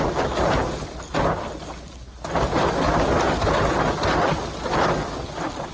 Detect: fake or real real